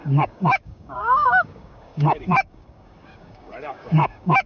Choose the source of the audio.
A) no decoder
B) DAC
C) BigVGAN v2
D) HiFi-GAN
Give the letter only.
B